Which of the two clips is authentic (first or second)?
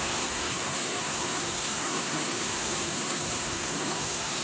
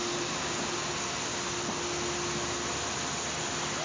second